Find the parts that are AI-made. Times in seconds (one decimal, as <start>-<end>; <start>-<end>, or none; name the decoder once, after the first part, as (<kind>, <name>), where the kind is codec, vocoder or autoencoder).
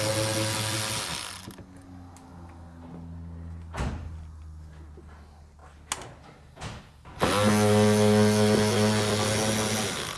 none